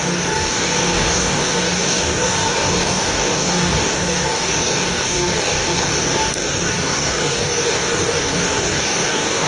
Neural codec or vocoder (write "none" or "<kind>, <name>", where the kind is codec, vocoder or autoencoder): codec, DAC